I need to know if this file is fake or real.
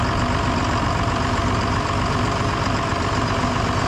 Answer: fake